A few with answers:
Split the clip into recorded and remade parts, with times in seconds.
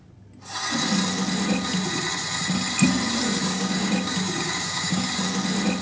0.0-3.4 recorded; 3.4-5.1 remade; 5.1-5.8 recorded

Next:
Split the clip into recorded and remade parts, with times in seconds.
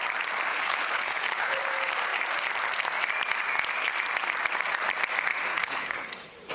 0.0-0.5 recorded; 0.5-1.6 remade; 1.6-5.5 recorded; 5.5-6.5 remade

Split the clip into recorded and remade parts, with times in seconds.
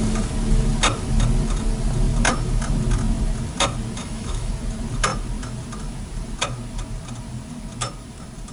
0.0-4.0 recorded; 4.0-4.5 remade; 4.5-8.5 recorded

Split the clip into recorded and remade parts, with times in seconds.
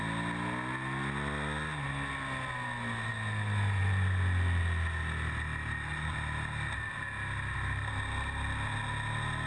0.0-9.5 recorded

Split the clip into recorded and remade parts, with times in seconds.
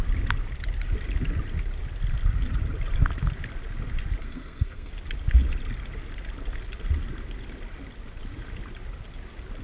0.0-4.2 recorded; 4.2-4.9 remade; 4.9-9.6 recorded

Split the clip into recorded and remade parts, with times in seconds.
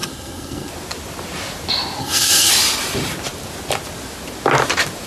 0.0-0.7 remade; 0.7-2.0 recorded; 2.0-2.5 remade; 2.5-5.1 recorded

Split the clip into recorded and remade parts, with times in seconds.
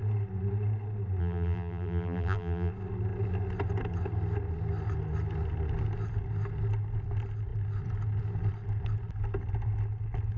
0.0-1.2 recorded; 1.2-2.7 remade; 2.7-10.4 recorded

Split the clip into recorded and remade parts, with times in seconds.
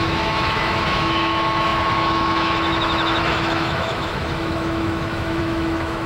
0.0-6.1 remade